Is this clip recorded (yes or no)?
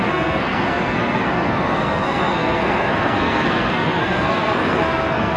no